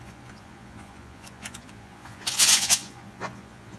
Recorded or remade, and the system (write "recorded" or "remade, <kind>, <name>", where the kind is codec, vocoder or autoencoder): remade, vocoder, Vocos